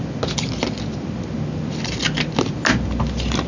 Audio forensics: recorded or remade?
recorded